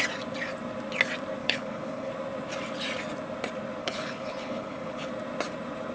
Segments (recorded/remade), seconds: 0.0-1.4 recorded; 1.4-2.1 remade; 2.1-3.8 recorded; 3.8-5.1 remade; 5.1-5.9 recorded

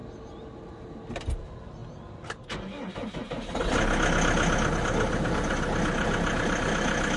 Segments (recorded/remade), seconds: 0.0-7.2 recorded

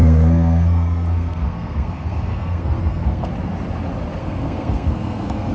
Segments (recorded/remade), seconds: 0.0-3.3 remade; 3.3-4.2 recorded; 4.2-5.5 remade

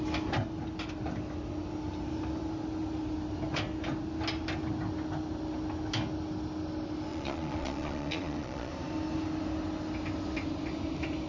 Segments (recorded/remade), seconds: 0.0-7.1 recorded; 7.1-8.7 remade; 8.7-11.3 recorded

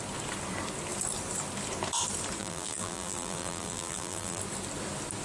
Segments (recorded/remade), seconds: 0.0-2.4 recorded; 2.4-4.4 remade; 4.4-5.2 recorded

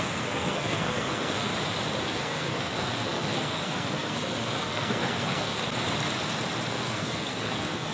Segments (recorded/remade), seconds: 0.0-1.5 remade; 1.5-2.0 recorded; 2.0-5.6 remade; 5.6-6.7 recorded; 6.7-7.9 remade

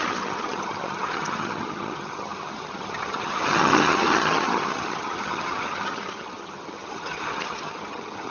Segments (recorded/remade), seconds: 0.0-8.3 remade

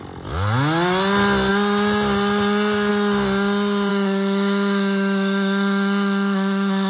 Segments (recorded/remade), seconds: 0.0-3.9 recorded; 3.9-6.9 remade